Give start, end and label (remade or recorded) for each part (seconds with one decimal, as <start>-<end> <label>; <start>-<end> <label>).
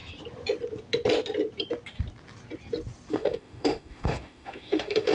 0.0-3.1 recorded; 3.1-5.1 remade